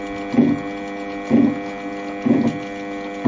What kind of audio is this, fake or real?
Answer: real